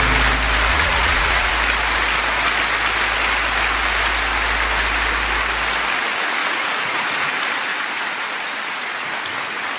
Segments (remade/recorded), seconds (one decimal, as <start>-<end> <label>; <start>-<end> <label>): 0.0-0.7 recorded; 0.7-1.5 remade; 1.5-6.4 recorded; 6.4-7.3 remade; 7.3-7.7 recorded; 7.7-9.2 remade; 9.2-9.8 recorded